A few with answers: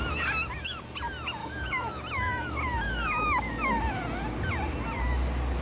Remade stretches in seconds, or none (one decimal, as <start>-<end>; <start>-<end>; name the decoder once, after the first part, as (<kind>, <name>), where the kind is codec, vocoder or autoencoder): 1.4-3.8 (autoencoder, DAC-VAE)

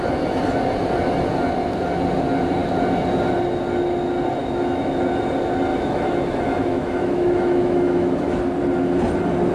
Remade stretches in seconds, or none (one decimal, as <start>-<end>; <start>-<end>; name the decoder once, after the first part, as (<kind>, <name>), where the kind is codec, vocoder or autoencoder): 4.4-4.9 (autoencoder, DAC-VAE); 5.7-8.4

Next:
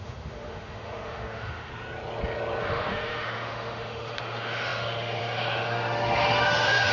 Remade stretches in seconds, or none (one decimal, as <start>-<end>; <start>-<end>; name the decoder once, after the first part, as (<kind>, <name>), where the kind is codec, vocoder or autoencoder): 0.0-1.7 (autoencoder, DAC-VAE); 2.6-6.9